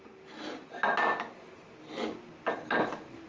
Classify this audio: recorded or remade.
recorded